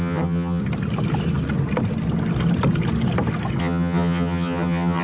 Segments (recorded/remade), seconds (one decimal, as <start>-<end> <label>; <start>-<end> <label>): 0.0-0.6 remade; 0.6-3.6 recorded; 3.6-5.0 remade